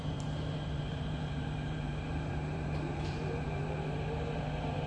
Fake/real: fake